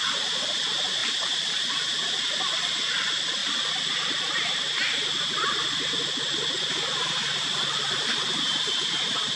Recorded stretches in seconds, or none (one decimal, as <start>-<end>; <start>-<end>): 0.0-3.4; 4.2-9.4